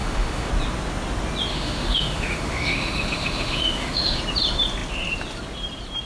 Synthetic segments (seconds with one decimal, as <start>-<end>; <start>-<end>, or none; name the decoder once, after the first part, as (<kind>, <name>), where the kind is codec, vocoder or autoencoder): 0.0-0.5 (autoencoder, DAC-VAE); 1.5-4.2